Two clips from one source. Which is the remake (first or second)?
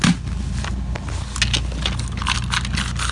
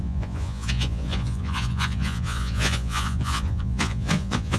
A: second